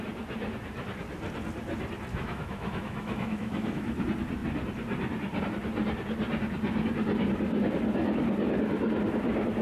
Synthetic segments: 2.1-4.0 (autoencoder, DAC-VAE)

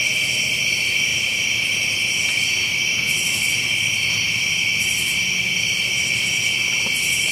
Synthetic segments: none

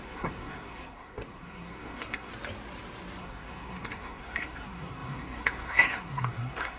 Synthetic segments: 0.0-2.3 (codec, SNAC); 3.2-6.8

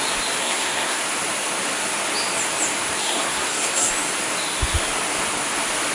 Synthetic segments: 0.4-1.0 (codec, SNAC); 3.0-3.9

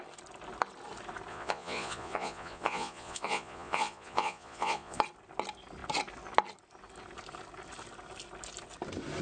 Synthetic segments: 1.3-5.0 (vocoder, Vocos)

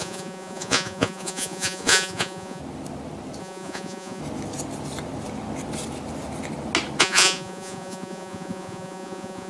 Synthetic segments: 0.0-2.6 (vocoder, Vocos); 3.4-4.2; 7.0-9.5

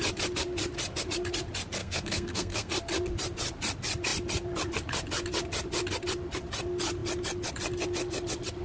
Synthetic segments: 1.8-2.7 (codec, SNAC)